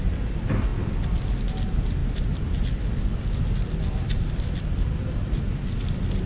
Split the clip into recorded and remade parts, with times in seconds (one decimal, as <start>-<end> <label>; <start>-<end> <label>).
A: 0.0-6.3 recorded